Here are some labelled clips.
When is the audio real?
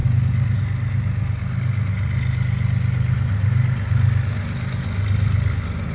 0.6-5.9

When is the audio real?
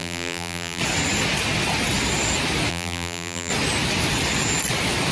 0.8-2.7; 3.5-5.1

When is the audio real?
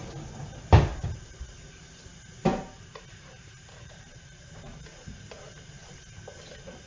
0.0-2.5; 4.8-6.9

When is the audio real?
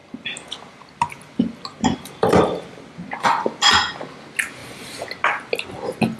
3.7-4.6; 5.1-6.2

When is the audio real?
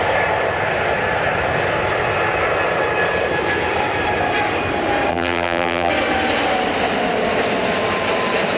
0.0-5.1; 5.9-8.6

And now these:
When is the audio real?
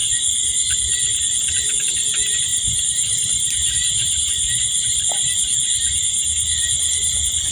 0.0-2.5; 5.0-7.5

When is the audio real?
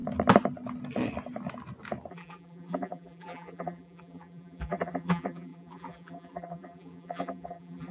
0.0-2.1